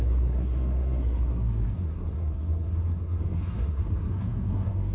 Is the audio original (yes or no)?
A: no